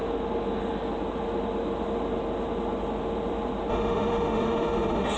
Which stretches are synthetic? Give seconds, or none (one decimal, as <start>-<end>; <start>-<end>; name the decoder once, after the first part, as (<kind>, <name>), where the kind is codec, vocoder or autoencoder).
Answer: 3.7-5.2 (autoencoder, DAC-VAE)